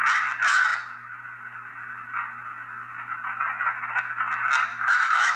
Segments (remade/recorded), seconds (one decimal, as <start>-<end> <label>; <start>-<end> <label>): 0.0-4.7 recorded; 4.7-5.4 remade